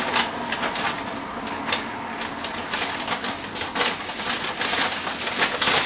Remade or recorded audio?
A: recorded